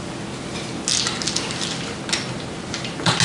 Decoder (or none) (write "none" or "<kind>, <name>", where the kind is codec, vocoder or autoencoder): none